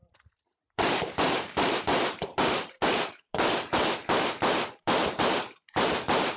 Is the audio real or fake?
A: fake